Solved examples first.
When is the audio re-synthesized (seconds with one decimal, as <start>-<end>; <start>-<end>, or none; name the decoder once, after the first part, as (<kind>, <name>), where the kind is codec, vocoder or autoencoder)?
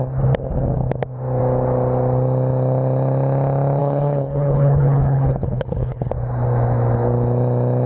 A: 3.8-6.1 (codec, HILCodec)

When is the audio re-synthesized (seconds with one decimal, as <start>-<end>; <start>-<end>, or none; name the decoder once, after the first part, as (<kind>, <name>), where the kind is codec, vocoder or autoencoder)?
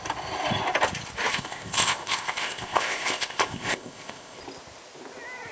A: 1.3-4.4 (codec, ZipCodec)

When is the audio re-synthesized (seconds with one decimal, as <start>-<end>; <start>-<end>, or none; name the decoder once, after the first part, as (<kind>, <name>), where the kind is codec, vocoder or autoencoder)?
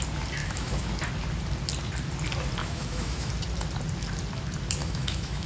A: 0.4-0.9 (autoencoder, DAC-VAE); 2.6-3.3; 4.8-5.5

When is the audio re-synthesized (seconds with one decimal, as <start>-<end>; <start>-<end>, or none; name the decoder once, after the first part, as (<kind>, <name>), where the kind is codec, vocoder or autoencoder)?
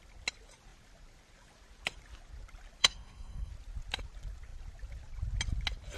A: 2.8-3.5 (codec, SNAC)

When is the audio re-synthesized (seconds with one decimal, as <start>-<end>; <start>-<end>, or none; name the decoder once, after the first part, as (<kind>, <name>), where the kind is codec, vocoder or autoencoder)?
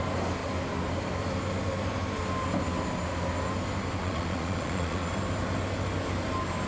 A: 4.0-5.1 (vocoder, Vocos)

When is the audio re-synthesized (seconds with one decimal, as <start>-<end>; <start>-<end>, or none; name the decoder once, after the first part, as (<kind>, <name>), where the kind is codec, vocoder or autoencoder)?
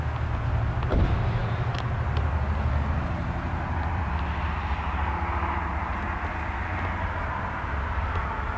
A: none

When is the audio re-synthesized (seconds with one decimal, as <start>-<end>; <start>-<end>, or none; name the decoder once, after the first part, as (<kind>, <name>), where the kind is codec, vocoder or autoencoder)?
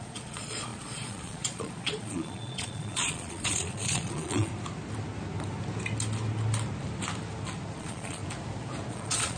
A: 0.0-4.5 (vocoder, Vocos); 7.8-8.2; 8.9-9.4